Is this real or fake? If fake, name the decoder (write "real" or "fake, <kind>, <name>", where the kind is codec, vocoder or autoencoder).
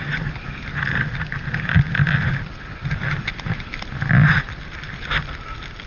real